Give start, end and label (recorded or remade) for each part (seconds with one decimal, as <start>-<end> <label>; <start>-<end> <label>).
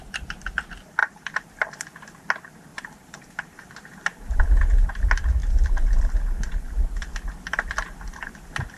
0.0-1.0 recorded; 1.0-1.7 remade; 1.7-2.7 recorded; 2.7-4.4 remade; 4.4-8.8 recorded